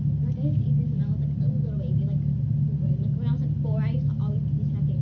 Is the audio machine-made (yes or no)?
no